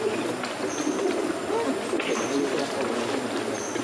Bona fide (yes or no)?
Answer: yes